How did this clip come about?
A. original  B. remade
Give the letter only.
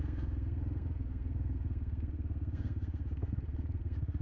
B